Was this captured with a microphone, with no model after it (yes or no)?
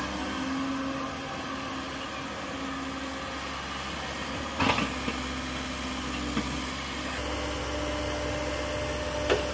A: yes